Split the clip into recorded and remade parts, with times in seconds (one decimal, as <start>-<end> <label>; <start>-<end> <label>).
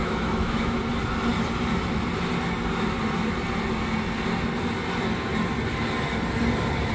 0.0-0.8 remade; 0.8-6.9 recorded